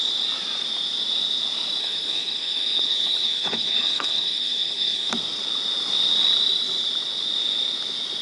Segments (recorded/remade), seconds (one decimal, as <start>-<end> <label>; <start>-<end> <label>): 0.0-1.8 recorded; 1.8-5.1 remade; 5.1-8.2 recorded